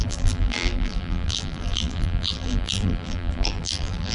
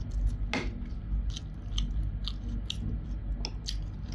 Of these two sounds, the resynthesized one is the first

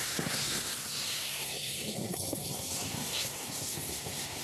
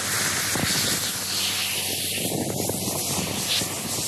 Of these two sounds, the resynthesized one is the first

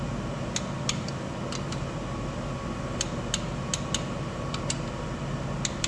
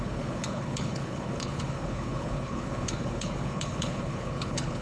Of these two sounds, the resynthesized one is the second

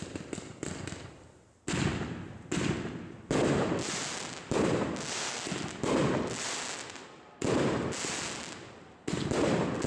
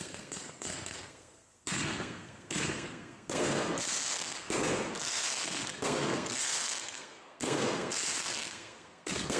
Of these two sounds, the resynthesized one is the second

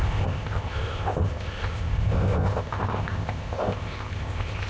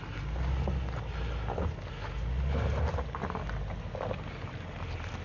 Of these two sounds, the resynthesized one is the first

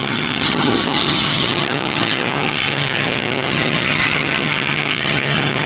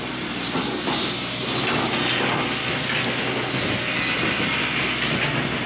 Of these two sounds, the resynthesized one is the first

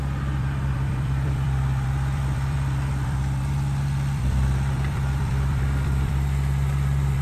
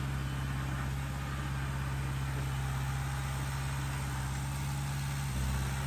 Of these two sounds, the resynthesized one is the first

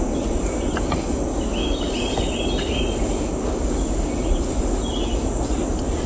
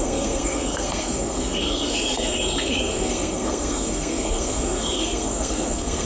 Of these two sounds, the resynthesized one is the second